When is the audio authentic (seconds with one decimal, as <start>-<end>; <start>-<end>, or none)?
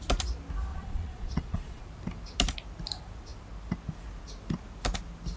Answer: 0.0-0.7; 1.8-5.4